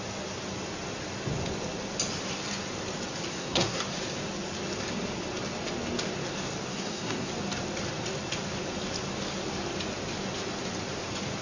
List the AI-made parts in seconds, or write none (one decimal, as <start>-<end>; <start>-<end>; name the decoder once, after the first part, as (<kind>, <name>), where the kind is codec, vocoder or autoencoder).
3.3-3.8 (codec, SNAC); 6.7-7.3

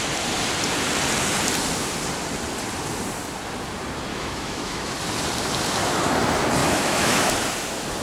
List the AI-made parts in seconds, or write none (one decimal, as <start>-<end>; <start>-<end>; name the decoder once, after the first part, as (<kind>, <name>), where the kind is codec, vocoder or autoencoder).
4.1-4.9 (autoencoder, DAC-VAE); 6.6-7.3

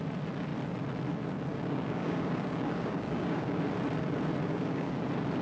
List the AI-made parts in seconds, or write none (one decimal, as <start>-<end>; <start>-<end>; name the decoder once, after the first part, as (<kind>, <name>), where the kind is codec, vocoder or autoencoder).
1.5-3.6 (codec, DAC); 4.4-5.0

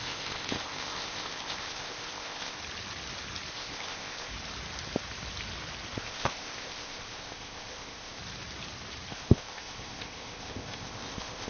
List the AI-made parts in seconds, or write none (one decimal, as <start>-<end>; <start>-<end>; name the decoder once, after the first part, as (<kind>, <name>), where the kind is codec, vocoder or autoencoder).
0.0-2.6 (codec, ZipCodec); 3.5-4.3; 6.0-8.2; 9.1-11.5

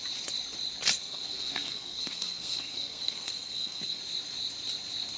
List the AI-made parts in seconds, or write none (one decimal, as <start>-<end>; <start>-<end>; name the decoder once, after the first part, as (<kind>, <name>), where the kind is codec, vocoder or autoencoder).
1.0-4.0 (codec, SNAC)

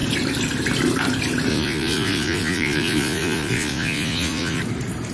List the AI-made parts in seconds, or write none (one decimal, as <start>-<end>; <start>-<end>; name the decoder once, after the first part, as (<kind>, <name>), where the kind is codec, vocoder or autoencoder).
1.5-4.6 (vocoder, Vocos)